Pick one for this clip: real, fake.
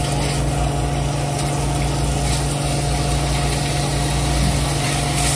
real